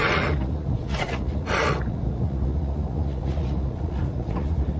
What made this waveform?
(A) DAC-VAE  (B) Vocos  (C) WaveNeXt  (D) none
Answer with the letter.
B